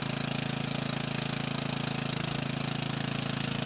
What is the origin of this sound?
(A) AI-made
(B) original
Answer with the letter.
B